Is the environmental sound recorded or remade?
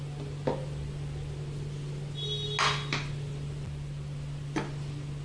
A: recorded